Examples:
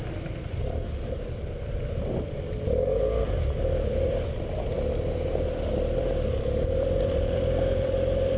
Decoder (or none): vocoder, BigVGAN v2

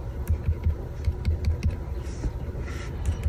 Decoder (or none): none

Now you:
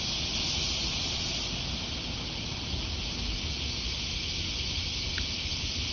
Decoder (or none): none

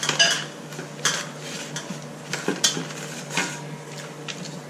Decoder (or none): none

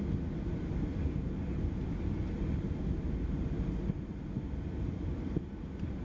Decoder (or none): none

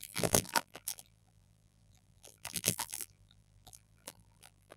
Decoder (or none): vocoder, BigVGAN v2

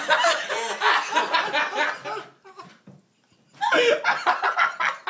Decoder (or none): none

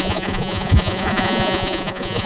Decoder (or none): vocoder, Vocos